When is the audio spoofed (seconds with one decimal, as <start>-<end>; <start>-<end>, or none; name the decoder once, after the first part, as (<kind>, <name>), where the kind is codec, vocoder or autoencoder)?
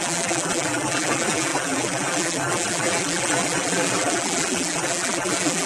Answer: 0.0-5.7 (vocoder, BigVGAN v2)